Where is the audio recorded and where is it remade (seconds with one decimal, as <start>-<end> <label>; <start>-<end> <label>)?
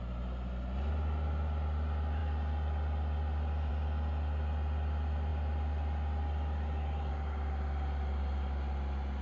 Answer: 0.0-9.2 recorded